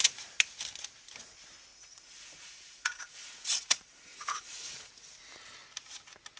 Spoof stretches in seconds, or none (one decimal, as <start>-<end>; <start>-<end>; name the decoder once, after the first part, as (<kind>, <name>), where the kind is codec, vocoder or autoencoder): 1.7-4.9 (vocoder, Vocos)